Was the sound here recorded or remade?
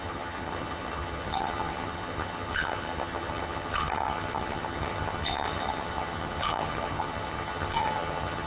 remade